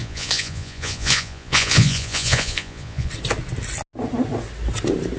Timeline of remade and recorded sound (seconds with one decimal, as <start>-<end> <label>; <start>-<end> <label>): 0.0-3.1 remade; 3.1-5.2 recorded